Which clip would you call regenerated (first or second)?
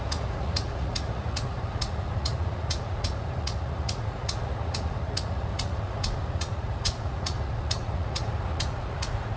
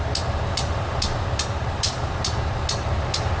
first